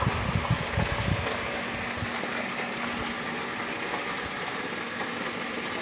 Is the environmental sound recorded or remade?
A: recorded